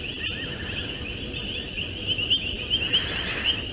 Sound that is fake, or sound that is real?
real